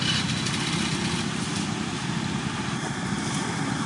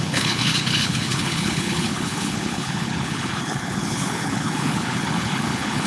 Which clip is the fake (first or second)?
second